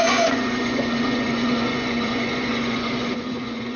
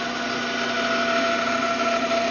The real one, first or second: second